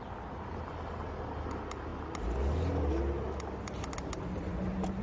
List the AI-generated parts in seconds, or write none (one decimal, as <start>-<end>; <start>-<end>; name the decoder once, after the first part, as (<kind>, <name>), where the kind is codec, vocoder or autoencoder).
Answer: none

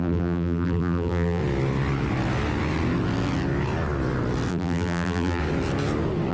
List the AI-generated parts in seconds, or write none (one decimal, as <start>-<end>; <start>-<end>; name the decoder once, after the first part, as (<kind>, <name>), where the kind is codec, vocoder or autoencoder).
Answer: 0.0-1.4 (vocoder, BigVGAN v2); 4.5-5.4